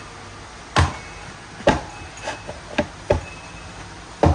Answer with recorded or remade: recorded